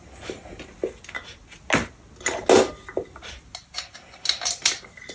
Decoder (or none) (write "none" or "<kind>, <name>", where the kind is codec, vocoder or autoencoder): none